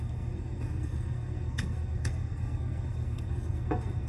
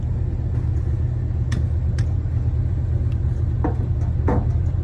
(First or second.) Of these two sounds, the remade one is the first